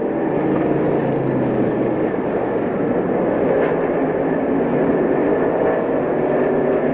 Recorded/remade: recorded